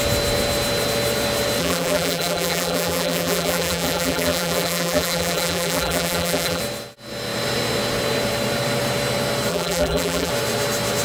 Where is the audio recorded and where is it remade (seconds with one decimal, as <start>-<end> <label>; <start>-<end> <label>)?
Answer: 0.0-1.6 recorded; 1.6-6.6 remade; 6.6-9.5 recorded; 9.5-10.3 remade; 10.3-11.0 recorded